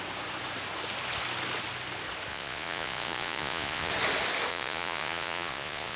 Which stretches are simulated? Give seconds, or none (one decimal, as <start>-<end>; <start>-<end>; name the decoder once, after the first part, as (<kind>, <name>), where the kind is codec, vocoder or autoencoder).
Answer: 2.3-3.9 (vocoder, Vocos); 4.5-6.0